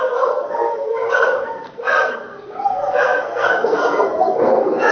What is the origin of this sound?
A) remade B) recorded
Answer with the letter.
A